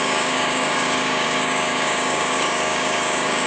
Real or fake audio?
fake